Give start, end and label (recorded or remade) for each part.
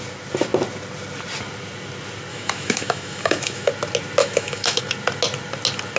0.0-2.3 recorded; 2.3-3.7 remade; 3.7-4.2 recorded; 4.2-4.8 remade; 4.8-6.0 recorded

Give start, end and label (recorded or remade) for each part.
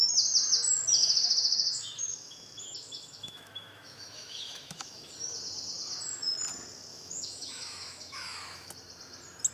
0.0-1.0 recorded; 1.0-5.1 remade; 5.1-6.9 recorded; 6.9-8.7 remade; 8.7-9.5 recorded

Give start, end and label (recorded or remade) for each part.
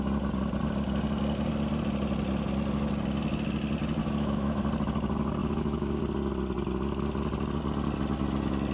0.0-4.0 recorded; 4.0-4.6 remade; 4.6-5.4 recorded; 5.4-6.0 remade; 6.0-8.7 recorded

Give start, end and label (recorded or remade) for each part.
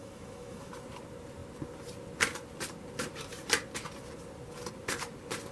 0.0-0.7 remade; 0.7-5.5 recorded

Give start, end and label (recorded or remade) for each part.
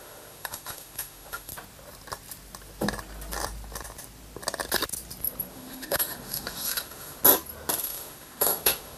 0.0-1.5 remade; 1.5-5.5 recorded; 5.5-7.2 remade; 7.2-7.8 recorded; 7.8-9.0 remade